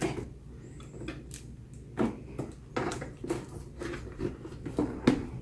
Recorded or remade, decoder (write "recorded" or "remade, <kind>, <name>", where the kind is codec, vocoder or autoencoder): recorded